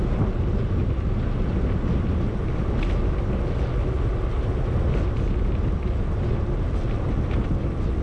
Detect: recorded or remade recorded